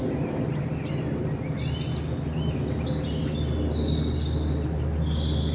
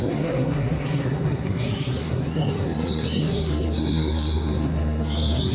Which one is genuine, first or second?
first